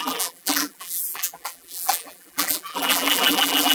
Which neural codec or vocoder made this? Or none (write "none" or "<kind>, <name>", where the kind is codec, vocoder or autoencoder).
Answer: vocoder, BigVGAN v2